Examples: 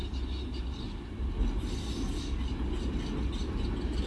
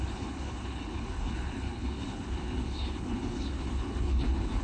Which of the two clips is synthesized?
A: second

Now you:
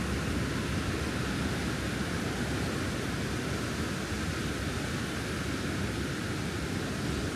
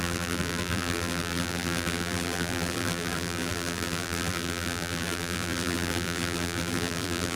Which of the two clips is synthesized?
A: second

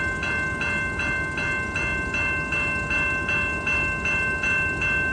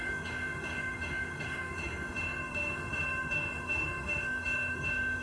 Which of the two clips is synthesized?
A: second